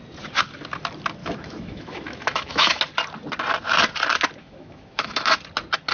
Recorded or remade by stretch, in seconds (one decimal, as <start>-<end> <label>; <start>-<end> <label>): 0.0-1.2 recorded; 1.2-2.8 remade; 2.8-4.4 recorded; 4.4-5.4 remade; 5.4-5.9 recorded